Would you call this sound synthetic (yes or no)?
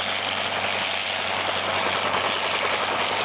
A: no